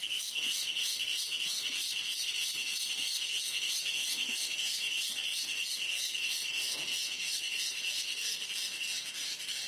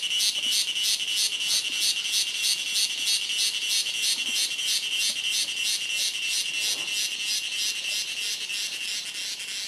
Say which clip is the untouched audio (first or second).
second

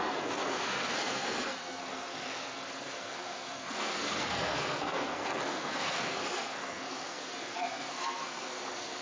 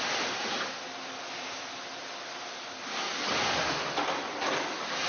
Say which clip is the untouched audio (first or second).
second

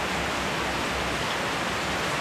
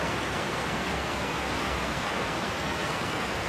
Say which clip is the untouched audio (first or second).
first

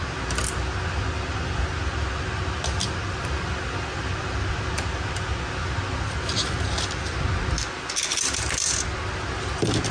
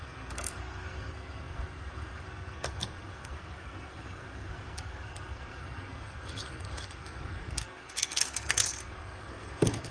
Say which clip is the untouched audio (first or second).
first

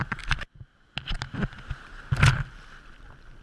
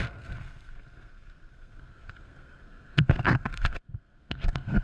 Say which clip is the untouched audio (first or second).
first